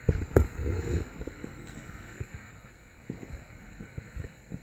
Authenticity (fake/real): fake